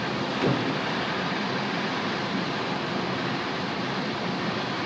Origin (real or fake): fake